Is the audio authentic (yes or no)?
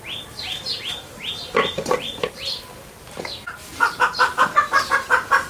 no